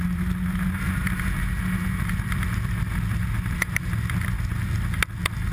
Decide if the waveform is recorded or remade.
recorded